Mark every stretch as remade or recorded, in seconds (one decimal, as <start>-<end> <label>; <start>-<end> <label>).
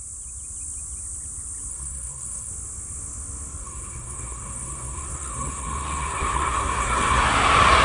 0.0-1.7 recorded; 1.7-2.5 remade; 2.5-3.6 recorded; 3.6-7.3 remade; 7.3-7.8 recorded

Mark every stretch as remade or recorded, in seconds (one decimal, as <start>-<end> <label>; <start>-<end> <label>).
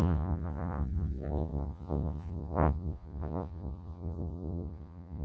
0.0-5.2 remade